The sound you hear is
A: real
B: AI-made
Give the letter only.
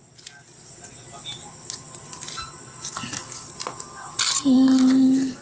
A